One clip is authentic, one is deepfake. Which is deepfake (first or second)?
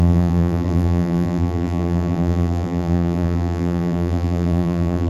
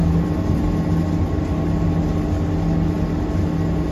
first